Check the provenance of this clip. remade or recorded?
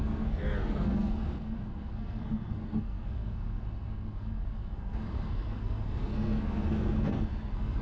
remade